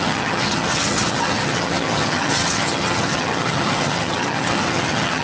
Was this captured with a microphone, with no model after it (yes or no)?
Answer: no